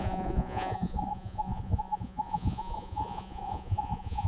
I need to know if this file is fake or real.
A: fake